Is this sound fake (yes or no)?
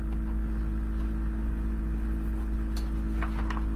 no